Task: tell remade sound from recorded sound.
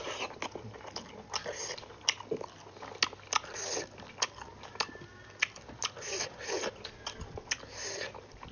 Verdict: recorded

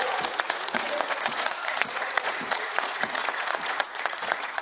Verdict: remade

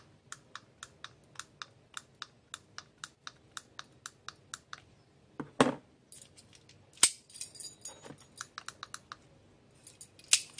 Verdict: recorded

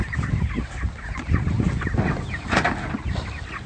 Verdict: recorded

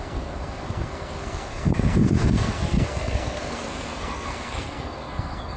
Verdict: remade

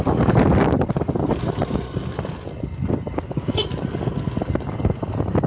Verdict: recorded